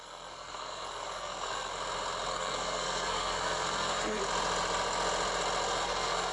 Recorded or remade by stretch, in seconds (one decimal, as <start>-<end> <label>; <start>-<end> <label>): 0.0-1.7 remade; 1.7-2.3 recorded; 2.3-4.2 remade; 4.2-5.8 recorded; 5.8-6.3 remade